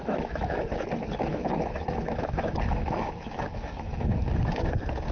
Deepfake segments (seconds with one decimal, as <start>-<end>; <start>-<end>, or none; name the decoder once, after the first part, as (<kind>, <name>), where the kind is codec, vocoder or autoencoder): 0.0-0.7 (autoencoder, DAC-VAE); 1.3-4.3